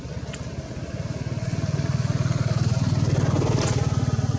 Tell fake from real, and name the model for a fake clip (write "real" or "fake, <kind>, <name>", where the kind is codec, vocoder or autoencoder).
real